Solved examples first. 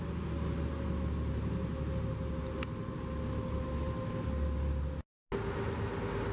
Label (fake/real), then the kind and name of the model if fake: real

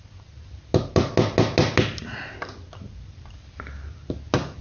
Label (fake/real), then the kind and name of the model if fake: real